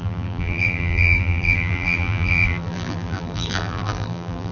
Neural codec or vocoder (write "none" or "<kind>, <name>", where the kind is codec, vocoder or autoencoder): vocoder, BigVGAN v2